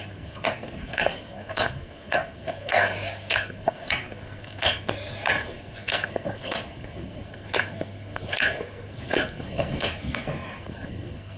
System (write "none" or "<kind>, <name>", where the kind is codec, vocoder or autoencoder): codec, SNAC